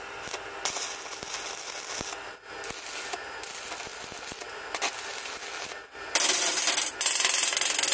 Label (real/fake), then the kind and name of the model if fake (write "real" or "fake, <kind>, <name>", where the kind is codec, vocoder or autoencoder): real